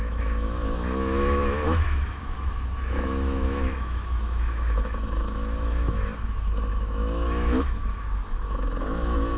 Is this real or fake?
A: fake